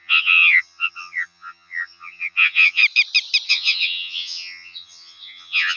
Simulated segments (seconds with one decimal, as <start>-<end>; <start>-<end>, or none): 0.0-2.8; 3.5-5.8